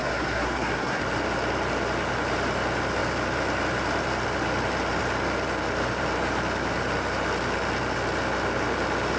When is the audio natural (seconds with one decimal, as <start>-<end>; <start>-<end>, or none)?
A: 1.0-9.2